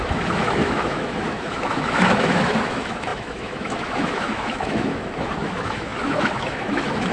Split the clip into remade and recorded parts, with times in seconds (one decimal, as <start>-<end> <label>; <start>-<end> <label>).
0.0-7.1 remade